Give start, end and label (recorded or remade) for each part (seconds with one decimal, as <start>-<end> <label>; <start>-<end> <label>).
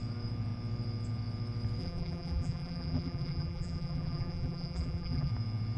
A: 0.0-1.8 recorded; 1.8-5.3 remade; 5.3-5.8 recorded